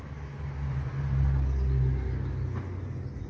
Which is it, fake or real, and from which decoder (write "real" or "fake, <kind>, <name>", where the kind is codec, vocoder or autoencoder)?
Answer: real